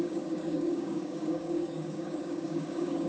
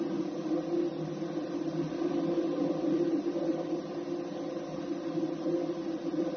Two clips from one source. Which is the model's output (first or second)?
first